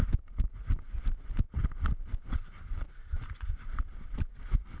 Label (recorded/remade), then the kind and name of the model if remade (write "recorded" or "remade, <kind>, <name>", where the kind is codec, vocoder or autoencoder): recorded